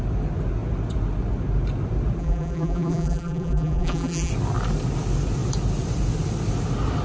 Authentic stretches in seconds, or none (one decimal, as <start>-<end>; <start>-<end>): 0.0-2.2; 4.3-7.0